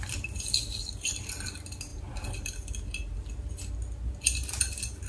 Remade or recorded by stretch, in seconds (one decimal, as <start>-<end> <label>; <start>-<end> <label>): 0.0-5.1 recorded